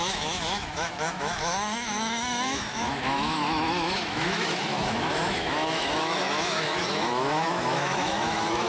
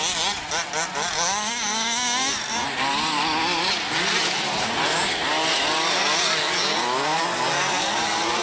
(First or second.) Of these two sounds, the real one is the second